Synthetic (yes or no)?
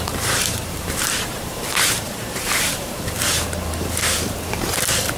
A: yes